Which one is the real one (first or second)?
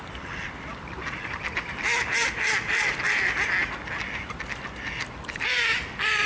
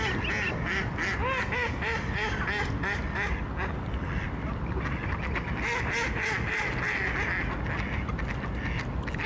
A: second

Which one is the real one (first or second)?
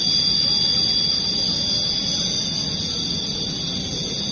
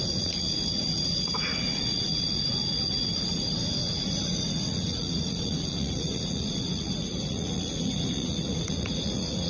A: first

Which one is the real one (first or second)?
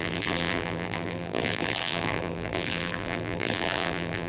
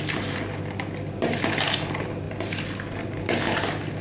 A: second